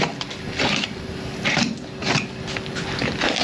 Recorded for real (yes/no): yes